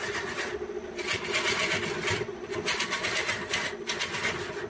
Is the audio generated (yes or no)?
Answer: no